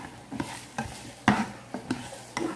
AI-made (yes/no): no